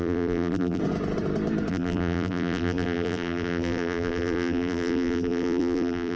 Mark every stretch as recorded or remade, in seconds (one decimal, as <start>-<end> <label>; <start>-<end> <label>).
0.0-0.8 remade; 0.8-1.7 recorded; 1.7-6.2 remade